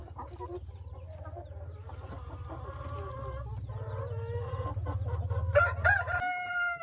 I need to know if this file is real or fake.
real